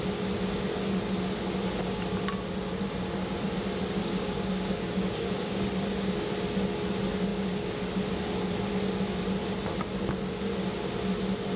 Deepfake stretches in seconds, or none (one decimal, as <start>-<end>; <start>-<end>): 4.0-5.7